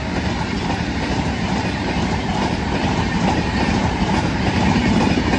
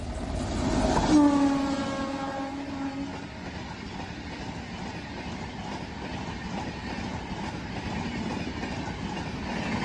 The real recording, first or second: second